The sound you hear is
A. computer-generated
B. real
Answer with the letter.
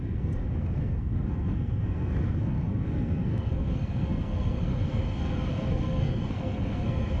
A